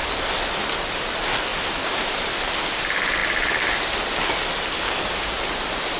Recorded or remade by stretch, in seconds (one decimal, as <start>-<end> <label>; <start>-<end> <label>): 0.0-1.5 recorded; 1.5-2.3 remade; 2.3-6.0 recorded